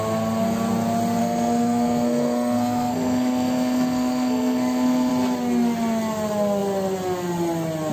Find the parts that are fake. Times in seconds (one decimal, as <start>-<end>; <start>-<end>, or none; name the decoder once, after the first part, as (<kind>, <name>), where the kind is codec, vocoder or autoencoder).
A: 1.2-5.1 (codec, SNAC)